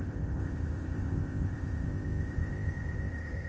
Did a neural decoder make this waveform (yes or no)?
yes